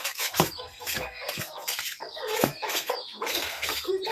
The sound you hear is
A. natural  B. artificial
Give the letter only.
B